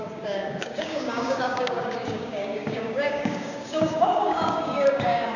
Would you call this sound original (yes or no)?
no